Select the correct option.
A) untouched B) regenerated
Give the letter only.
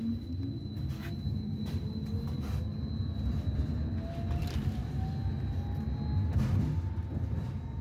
A